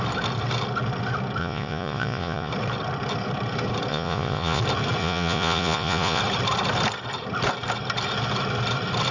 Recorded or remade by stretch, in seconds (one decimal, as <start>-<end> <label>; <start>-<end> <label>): 0.0-1.4 recorded; 1.4-2.5 remade; 2.5-3.9 recorded; 3.9-4.6 remade; 4.6-5.0 recorded; 5.0-6.2 remade; 6.2-9.1 recorded